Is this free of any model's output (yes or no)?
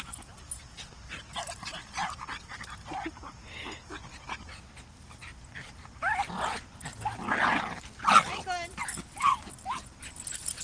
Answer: yes